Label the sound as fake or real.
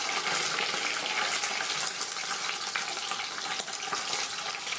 real